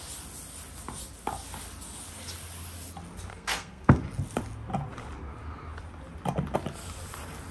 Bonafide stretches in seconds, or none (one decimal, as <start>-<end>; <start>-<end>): 0.0-3.3; 4.0-7.5